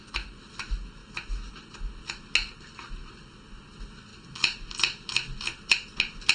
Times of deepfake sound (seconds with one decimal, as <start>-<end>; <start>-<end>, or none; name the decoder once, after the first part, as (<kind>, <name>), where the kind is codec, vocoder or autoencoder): none